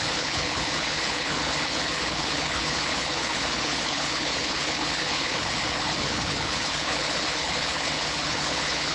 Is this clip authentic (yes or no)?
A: no